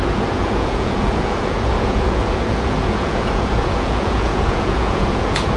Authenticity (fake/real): fake